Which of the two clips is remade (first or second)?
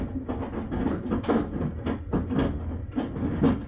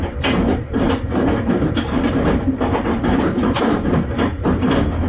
second